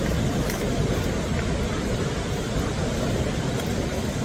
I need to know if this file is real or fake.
real